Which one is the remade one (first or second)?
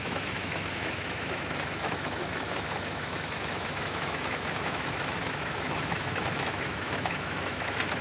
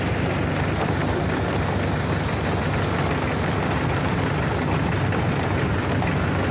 first